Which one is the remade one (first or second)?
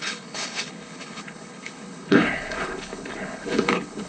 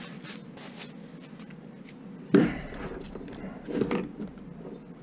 first